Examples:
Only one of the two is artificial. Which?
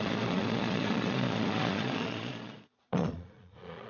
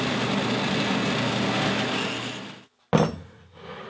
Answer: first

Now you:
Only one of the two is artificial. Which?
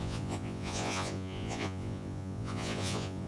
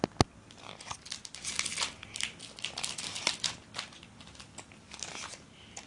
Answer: first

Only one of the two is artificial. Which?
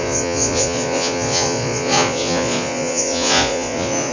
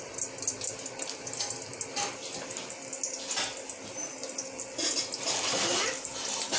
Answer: first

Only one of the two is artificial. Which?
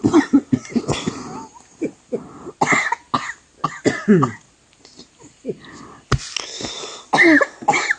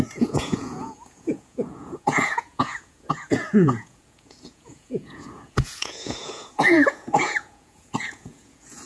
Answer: second